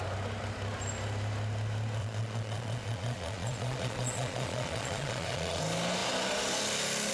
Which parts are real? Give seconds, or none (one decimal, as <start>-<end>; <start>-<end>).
0.0-2.0; 5.6-7.1